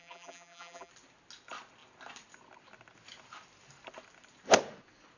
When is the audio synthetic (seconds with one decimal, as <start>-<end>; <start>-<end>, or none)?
0.0-0.9